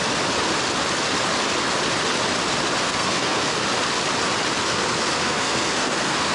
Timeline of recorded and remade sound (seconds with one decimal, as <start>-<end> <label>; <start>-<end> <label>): 0.0-2.8 recorded; 2.8-3.6 remade; 3.6-4.6 recorded; 4.6-6.3 remade